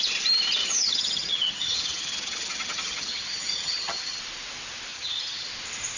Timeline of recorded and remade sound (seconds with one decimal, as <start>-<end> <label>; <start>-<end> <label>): 0.0-0.6 recorded; 0.6-4.2 remade; 4.2-4.9 recorded; 4.9-5.5 remade; 5.5-6.0 recorded